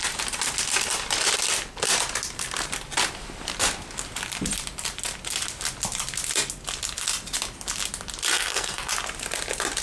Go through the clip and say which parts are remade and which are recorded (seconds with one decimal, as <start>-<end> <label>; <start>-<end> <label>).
0.0-8.3 recorded; 8.3-8.9 remade; 8.9-9.8 recorded